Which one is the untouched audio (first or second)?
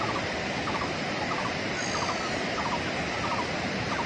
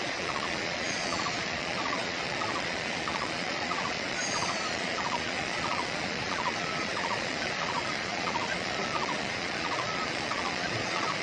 first